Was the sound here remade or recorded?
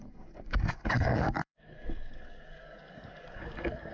remade